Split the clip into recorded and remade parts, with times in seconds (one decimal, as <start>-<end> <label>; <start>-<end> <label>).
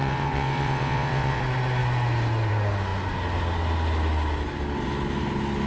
0.0-1.4 remade; 1.4-5.7 recorded